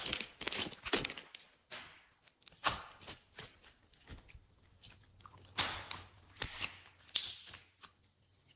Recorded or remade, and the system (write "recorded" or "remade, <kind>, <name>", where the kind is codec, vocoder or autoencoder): recorded